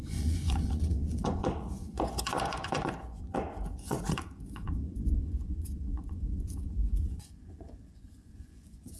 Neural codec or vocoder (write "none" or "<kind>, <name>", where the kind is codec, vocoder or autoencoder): vocoder, Vocos